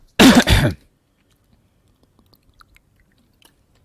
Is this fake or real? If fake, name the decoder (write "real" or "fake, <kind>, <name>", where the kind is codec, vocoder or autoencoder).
real